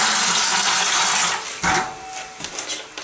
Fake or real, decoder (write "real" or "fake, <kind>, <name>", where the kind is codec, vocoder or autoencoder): real